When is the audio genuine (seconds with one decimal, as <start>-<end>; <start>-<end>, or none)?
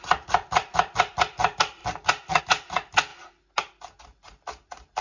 1.8-2.4; 3.1-4.0